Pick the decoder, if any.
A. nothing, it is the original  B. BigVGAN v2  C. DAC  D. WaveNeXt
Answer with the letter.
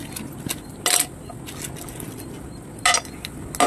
A